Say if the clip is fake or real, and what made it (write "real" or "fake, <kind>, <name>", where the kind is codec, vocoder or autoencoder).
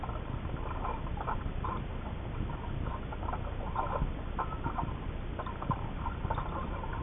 real